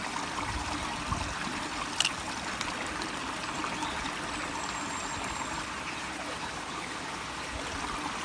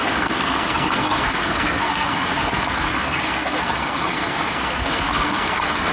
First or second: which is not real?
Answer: second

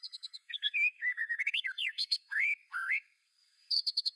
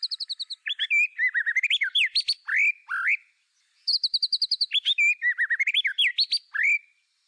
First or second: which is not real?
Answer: first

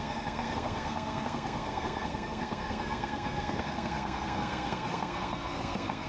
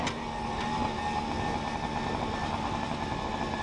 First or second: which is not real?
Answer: first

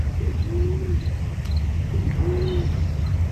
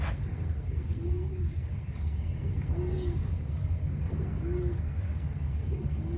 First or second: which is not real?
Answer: second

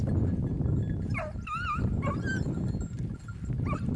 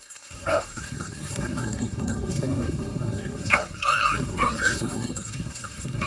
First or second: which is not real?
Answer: second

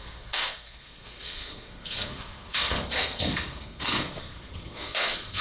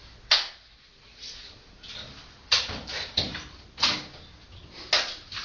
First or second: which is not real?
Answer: first